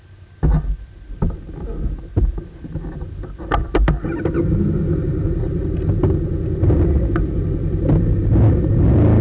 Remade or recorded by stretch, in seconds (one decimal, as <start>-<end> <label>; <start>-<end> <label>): 0.0-9.2 recorded